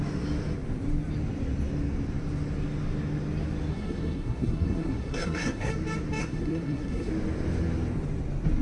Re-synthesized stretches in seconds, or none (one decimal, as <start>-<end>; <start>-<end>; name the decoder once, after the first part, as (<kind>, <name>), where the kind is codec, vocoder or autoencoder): 3.7-5.7 (codec, SNAC); 6.2-7.1